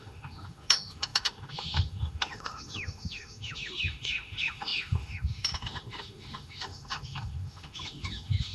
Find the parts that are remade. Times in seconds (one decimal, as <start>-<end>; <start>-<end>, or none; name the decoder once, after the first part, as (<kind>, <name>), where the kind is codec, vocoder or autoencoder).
0.0-8.5 (autoencoder, DAC-VAE)